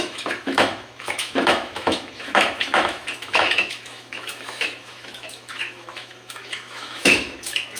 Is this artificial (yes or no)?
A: yes